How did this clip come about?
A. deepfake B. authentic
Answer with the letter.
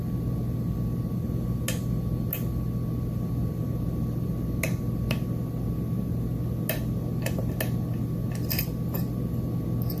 B